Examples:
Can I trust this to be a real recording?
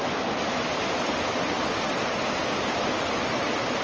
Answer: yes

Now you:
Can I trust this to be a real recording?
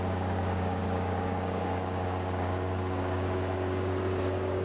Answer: no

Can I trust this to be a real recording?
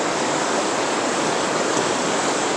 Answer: no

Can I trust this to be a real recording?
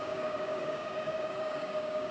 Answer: no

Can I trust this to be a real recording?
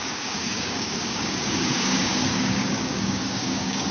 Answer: no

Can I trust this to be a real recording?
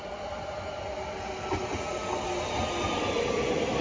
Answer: yes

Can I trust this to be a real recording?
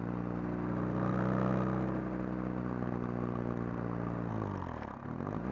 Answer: yes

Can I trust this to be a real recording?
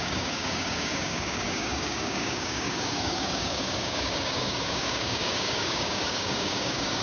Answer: no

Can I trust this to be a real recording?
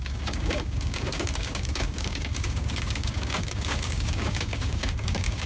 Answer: no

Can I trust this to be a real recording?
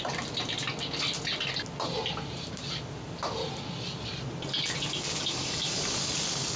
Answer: yes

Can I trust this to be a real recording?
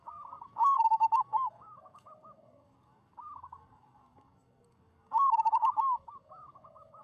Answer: no